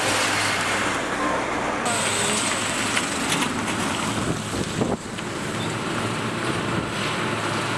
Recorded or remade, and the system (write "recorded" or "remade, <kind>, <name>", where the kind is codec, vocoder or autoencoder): recorded